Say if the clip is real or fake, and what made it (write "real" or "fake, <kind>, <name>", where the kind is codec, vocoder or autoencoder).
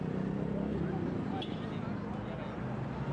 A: real